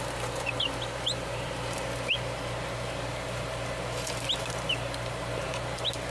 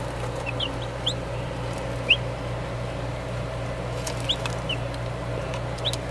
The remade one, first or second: first